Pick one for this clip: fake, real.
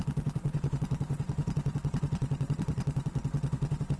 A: fake